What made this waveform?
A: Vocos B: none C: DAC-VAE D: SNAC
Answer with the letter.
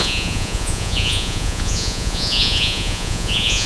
A